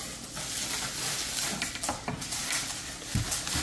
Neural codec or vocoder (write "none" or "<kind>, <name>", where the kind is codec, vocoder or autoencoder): none